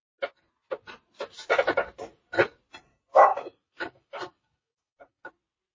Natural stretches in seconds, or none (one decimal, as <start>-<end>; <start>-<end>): 0.0-3.3; 5.3-5.7